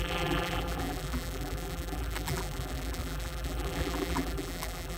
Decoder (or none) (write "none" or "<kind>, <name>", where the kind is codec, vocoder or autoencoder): vocoder, BigVGAN v2